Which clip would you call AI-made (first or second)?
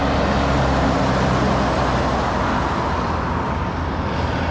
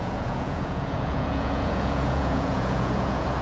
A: second